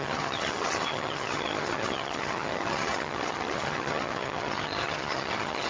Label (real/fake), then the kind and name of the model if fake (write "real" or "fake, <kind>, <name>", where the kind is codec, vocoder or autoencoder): fake, vocoder, HiFi-GAN